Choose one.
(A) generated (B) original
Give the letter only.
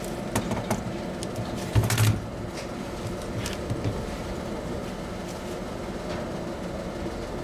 B